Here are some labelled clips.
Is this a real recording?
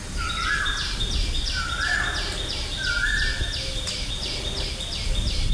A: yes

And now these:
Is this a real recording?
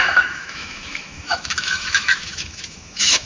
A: no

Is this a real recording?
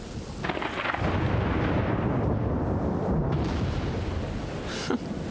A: yes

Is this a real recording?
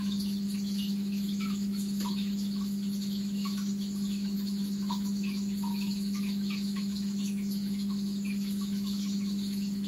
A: no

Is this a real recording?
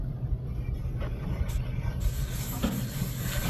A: yes